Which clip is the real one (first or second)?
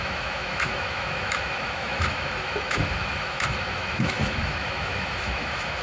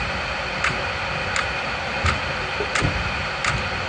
second